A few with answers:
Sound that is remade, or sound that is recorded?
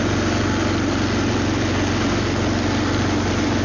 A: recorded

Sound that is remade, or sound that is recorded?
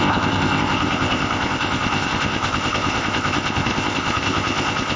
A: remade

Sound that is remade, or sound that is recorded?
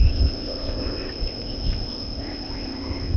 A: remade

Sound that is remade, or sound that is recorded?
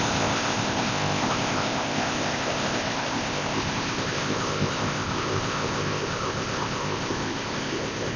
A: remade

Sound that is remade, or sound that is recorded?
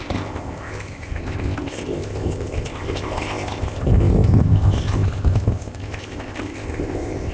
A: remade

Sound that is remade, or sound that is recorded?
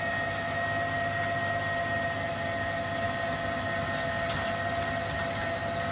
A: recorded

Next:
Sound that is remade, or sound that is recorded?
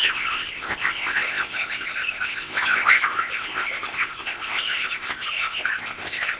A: remade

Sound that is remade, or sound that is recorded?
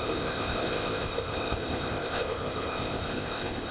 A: remade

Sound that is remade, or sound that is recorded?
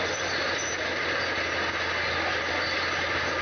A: recorded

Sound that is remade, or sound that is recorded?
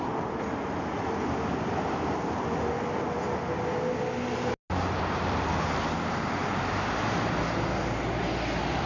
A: recorded